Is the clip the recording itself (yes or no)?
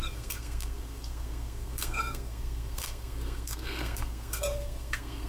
no